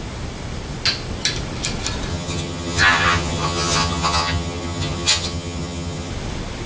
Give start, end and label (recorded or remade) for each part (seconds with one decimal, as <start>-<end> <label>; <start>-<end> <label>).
0.0-2.1 recorded; 2.1-6.1 remade; 6.1-6.7 recorded

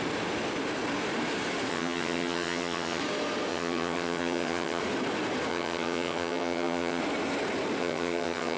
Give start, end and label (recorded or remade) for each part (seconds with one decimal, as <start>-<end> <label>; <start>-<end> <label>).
0.0-1.7 recorded; 1.7-3.0 remade; 3.0-3.5 recorded; 3.5-4.8 remade; 4.8-5.5 recorded; 5.5-7.0 remade; 7.0-7.8 recorded; 7.8-8.6 remade

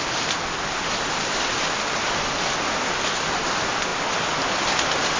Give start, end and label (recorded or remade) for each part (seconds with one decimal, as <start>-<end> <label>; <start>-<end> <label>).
0.0-5.2 recorded

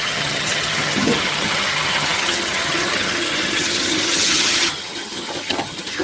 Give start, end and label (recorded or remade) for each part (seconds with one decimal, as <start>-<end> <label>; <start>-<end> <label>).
0.0-6.0 remade

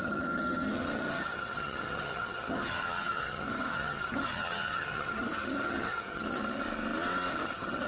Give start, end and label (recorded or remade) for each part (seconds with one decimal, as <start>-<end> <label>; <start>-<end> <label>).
0.0-6.6 remade; 6.6-7.3 recorded; 7.3-7.9 remade

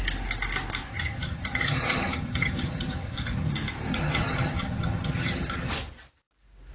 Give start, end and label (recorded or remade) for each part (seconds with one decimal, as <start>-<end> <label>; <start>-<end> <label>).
0.0-0.9 recorded; 0.9-3.5 remade; 3.5-3.9 recorded; 3.9-5.7 remade; 5.7-6.7 recorded

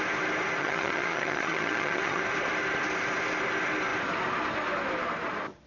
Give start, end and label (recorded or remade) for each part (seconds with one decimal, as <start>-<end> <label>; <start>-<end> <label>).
0.0-0.6 recorded; 0.6-2.2 remade; 2.2-5.7 recorded

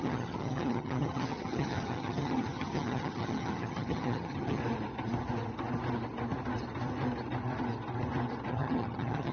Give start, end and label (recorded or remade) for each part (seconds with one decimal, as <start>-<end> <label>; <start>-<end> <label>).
0.0-4.6 remade; 4.6-8.5 recorded; 8.5-9.3 remade